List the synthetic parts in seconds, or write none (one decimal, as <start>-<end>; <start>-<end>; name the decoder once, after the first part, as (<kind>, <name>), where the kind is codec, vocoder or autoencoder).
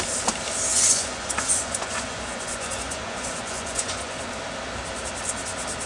0.7-4.2 (vocoder, Vocos)